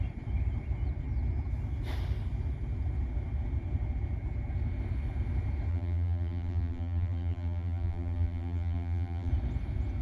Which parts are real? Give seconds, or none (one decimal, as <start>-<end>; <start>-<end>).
0.0-5.7; 9.3-10.0